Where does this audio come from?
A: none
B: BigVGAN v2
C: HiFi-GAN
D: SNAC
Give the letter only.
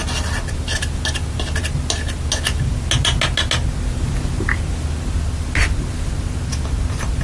A